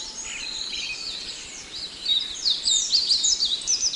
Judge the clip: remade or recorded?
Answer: remade